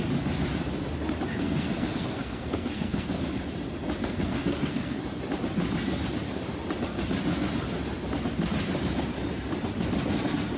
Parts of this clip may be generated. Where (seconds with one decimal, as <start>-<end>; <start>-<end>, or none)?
1.3-3.2; 4.0-5.0